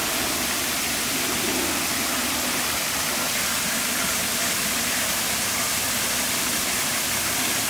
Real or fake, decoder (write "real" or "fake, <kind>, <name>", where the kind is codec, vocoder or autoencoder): fake, vocoder, BigVGAN v2